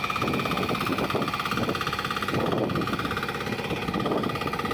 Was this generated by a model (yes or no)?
no